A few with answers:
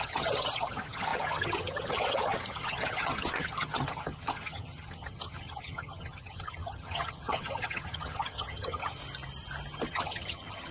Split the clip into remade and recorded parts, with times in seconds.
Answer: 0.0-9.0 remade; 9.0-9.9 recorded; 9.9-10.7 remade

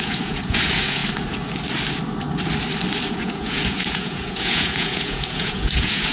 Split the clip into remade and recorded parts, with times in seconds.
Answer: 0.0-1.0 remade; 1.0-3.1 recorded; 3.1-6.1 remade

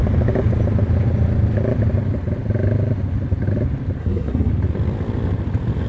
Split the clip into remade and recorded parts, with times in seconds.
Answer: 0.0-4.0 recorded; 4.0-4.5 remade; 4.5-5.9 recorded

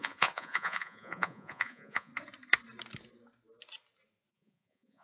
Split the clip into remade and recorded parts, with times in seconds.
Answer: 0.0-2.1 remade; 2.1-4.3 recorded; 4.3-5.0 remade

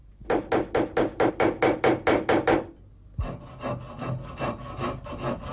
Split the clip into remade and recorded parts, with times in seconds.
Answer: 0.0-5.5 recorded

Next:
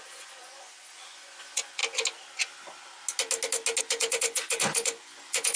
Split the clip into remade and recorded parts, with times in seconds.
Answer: 0.0-1.8 remade; 1.8-3.8 recorded; 3.8-5.6 remade